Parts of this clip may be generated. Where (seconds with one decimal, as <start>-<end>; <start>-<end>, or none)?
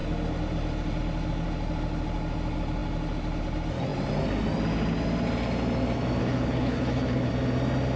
6.2-7.3